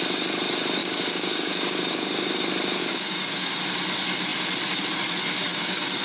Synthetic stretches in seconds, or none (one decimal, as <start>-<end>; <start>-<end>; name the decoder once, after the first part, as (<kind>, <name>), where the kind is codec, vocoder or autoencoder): 0.8-2.4 (codec, DAC); 2.8-3.7; 5.5-6.0